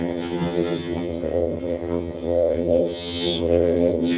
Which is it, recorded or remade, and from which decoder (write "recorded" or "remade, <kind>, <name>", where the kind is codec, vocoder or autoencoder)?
remade, vocoder, HiFi-GAN